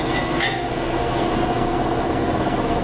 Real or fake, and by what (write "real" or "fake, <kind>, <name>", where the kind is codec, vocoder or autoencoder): fake, codec, SNAC